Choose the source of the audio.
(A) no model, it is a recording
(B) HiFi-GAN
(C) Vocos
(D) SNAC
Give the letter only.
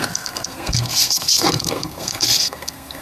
D